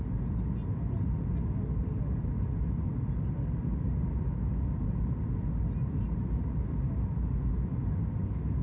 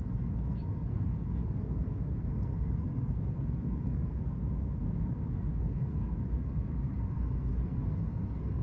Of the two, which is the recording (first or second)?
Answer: first